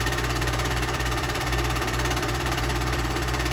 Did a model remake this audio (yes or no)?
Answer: yes